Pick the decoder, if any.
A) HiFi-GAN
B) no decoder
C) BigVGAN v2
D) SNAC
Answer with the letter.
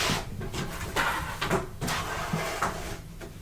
B